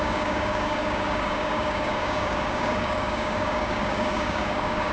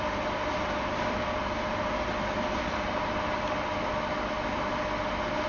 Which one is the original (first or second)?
second